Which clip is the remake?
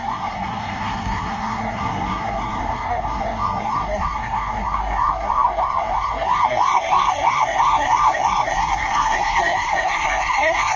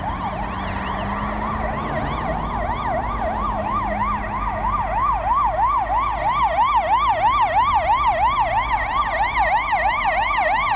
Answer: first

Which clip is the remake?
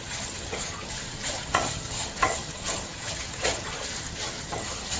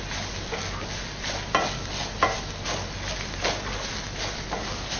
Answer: first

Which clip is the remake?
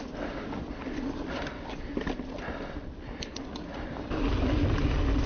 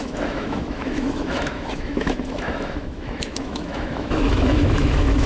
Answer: second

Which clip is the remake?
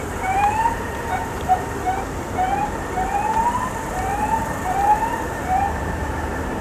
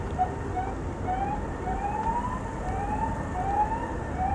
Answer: first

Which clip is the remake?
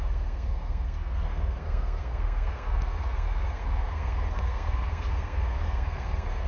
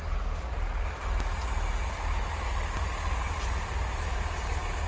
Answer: first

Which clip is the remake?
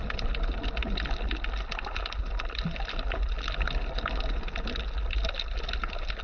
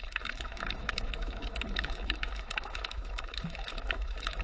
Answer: second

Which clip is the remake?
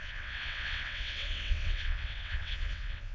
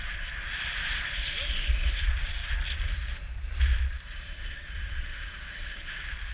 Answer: first